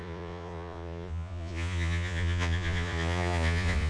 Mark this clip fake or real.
fake